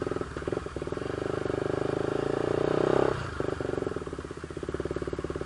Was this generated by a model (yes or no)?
yes